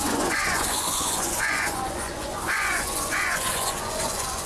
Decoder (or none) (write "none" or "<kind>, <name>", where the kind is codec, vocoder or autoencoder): vocoder, Vocos